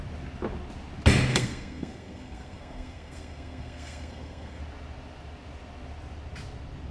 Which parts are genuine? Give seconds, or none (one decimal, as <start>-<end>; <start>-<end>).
0.0-1.3; 4.6-6.9